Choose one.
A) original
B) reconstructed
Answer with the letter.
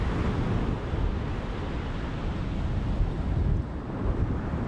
A